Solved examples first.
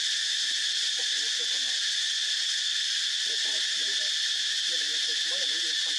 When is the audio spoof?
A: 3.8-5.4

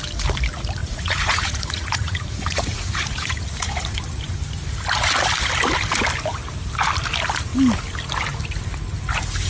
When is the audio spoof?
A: 0.8-4.0